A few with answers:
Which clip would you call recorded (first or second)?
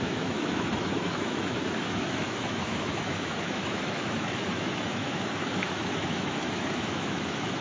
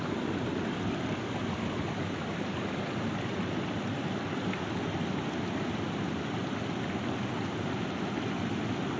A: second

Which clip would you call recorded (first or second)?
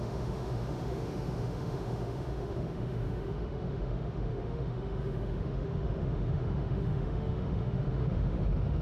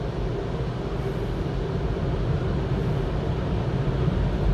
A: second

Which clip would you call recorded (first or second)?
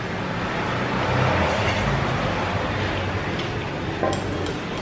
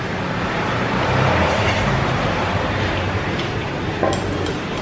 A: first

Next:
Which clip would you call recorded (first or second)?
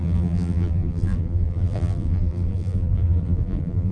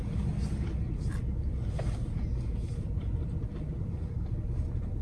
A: second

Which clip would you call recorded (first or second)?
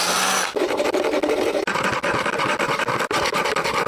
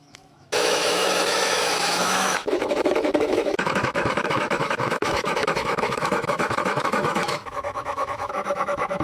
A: first